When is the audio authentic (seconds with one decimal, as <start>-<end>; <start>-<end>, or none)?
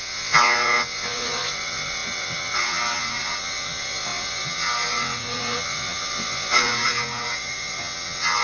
none